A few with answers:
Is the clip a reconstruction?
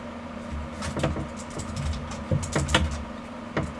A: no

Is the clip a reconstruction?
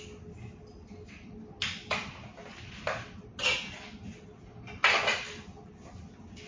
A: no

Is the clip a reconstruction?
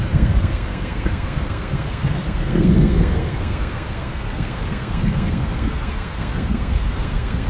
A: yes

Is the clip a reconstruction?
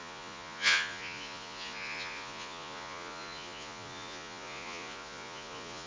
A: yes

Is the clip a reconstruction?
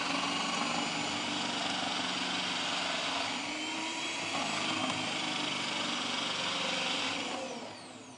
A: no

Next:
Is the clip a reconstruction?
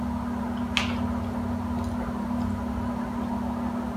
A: no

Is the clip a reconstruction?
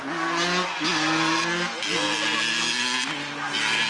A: no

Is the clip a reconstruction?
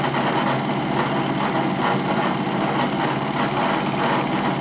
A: no